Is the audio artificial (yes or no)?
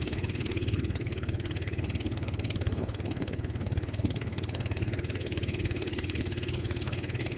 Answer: yes